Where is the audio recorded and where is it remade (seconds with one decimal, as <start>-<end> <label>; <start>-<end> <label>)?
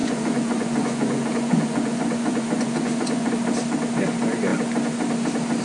0.0-3.3 remade; 3.3-5.6 recorded